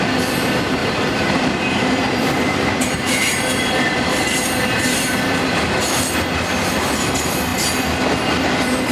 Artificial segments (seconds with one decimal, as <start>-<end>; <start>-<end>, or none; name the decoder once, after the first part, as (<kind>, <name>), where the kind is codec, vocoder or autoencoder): 0.8-5.7 (vocoder, BigVGAN v2)